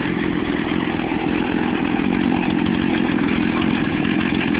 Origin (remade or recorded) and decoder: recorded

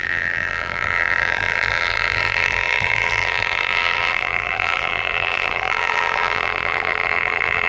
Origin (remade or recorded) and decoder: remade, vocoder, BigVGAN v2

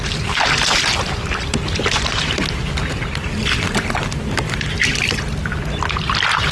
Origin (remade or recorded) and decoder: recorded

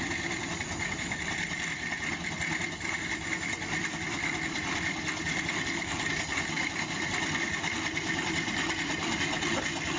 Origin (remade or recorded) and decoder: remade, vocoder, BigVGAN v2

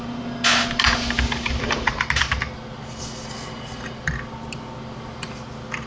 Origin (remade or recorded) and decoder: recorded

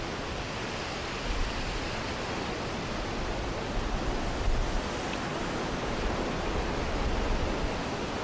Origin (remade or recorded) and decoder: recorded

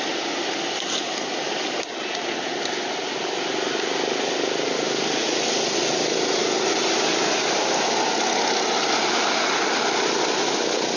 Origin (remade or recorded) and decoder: recorded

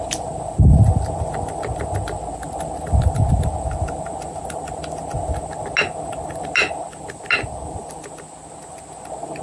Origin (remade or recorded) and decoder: recorded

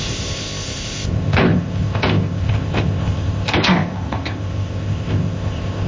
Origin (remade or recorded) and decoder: remade, codec, ZipCodec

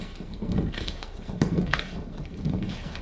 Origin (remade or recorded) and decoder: remade, codec, SNAC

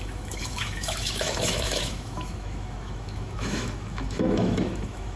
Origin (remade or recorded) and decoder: remade, autoencoder, DAC-VAE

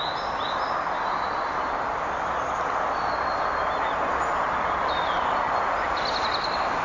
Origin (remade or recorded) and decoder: recorded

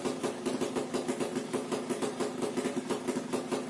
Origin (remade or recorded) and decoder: recorded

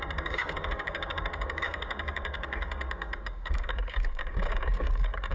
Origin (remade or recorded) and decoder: remade, codec, DAC